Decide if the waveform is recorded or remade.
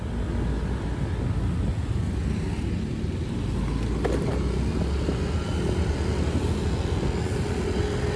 recorded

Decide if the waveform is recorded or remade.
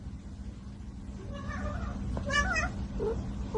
recorded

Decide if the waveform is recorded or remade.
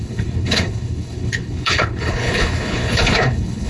remade